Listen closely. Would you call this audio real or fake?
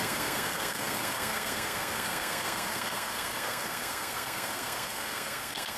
fake